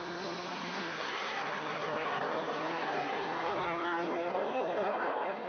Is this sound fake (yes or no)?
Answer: yes